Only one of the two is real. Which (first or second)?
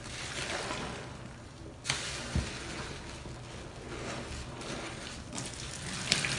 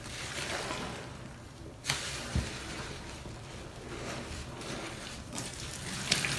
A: first